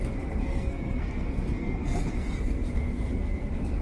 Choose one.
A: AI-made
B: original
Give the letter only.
A